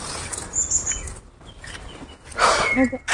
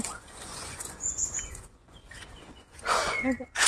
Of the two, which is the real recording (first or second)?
first